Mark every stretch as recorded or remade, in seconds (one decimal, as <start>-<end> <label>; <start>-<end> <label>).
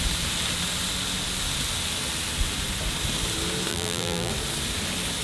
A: 0.0-3.7 recorded; 3.7-4.3 remade; 4.3-5.2 recorded